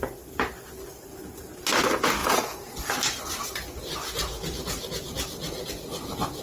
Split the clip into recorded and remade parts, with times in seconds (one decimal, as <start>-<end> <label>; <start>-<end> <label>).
0.0-2.2 recorded; 2.2-2.8 remade; 2.8-6.4 recorded